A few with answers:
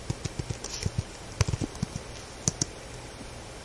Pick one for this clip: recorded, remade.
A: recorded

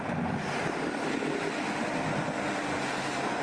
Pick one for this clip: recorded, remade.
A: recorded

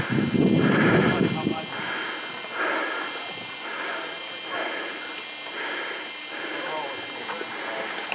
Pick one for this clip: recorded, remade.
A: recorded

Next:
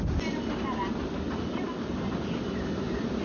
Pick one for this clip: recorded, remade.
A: recorded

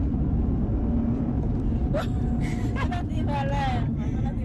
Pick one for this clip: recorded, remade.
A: recorded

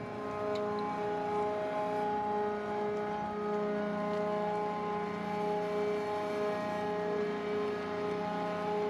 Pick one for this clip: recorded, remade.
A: recorded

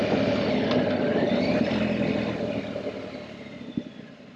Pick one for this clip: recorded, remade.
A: recorded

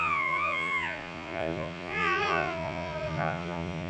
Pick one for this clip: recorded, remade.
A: remade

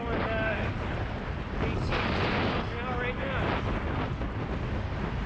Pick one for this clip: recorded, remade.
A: recorded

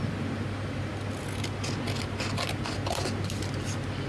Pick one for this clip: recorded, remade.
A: recorded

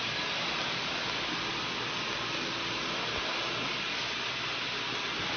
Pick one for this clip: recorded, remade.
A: recorded